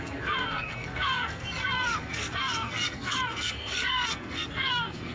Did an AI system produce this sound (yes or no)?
yes